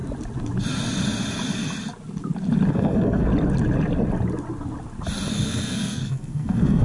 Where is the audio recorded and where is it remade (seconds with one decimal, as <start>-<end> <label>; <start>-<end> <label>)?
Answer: 0.0-2.7 recorded; 2.7-3.3 remade; 3.3-5.3 recorded; 5.3-6.8 remade